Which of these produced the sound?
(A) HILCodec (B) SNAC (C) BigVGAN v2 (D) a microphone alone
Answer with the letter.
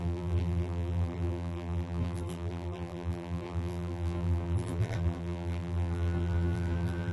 C